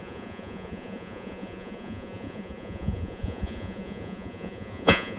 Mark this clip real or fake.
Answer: fake